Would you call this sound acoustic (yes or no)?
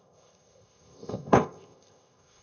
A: no